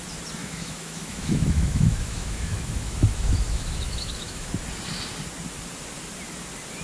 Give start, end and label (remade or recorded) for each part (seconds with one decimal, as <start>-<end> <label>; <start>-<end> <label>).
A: 0.0-0.4 recorded; 0.4-4.5 remade; 4.5-6.8 recorded